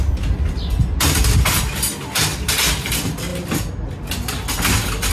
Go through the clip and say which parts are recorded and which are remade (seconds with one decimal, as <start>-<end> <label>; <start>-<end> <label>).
0.0-5.1 recorded